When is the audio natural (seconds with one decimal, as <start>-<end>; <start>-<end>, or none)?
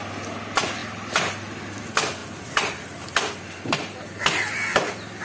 0.0-5.2